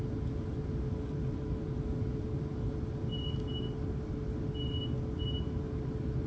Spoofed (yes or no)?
no